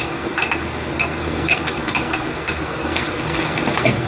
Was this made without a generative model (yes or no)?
no